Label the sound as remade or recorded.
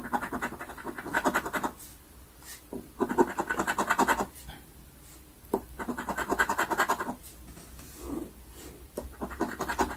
recorded